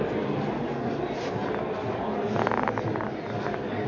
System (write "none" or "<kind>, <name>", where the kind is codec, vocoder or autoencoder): none